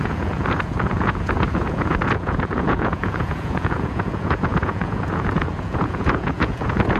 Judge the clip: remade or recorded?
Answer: remade